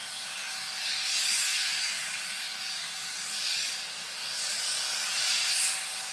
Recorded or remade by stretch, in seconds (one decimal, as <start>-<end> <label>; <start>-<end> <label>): 0.0-3.7 remade; 3.7-4.2 recorded; 4.2-5.3 remade; 5.3-6.1 recorded